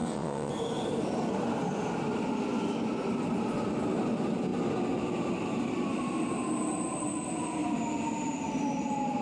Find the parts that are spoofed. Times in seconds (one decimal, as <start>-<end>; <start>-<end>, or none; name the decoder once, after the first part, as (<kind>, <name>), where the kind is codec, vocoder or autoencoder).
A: 0.0-0.5 (vocoder, WaveNeXt)